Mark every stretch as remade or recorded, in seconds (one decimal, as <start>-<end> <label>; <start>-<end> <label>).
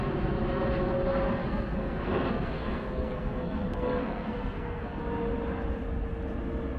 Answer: 0.0-1.4 recorded; 1.4-5.0 remade; 5.0-6.8 recorded